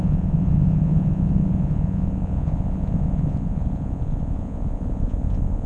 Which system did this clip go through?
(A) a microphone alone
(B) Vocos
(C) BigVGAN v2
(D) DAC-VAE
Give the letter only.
B